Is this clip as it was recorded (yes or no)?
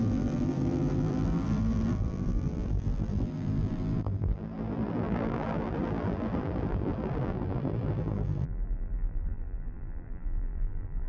no